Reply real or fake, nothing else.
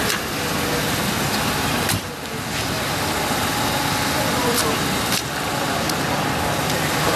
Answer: real